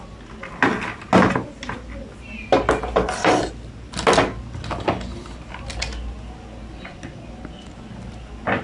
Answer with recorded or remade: recorded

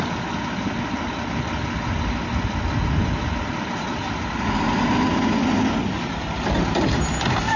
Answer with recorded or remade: recorded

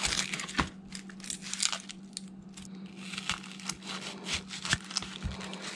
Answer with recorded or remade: recorded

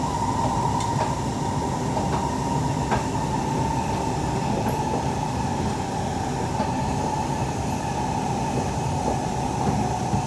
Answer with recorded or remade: recorded